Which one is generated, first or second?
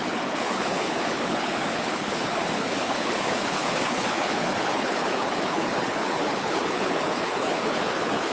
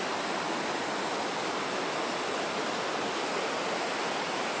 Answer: first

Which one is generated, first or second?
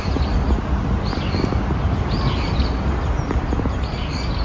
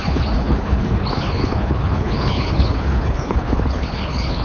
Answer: second